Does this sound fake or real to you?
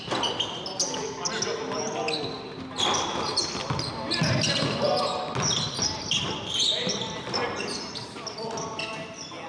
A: real